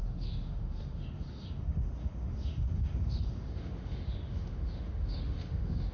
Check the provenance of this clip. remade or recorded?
remade